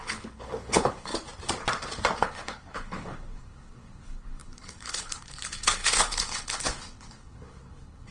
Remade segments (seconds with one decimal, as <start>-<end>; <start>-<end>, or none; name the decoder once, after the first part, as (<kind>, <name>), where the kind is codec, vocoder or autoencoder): 0.0-1.1 (codec, HILCodec); 2.2-8.1